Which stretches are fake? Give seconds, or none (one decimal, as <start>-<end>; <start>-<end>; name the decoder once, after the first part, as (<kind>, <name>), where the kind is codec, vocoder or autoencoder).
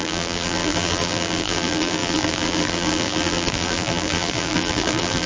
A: 0.0-5.3 (vocoder, BigVGAN v2)